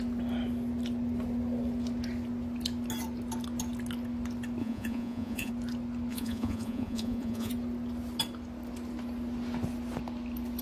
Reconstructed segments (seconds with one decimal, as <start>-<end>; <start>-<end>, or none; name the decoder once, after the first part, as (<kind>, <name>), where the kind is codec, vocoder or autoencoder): 4.6-5.5 (vocoder, Vocos); 6.1-7.5